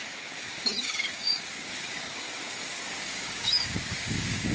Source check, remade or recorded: remade